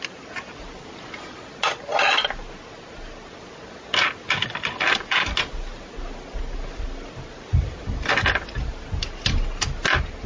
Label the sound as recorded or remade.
recorded